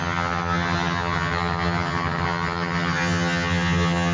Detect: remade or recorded remade